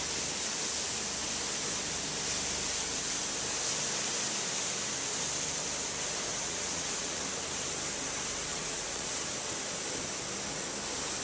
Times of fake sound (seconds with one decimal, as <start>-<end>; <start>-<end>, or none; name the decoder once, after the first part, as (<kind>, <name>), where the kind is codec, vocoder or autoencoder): 6.3-7.2 (vocoder, Vocos); 8.5-9.1